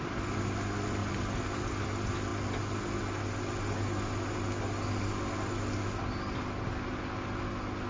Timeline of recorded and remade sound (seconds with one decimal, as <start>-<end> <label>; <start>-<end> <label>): 0.0-7.9 recorded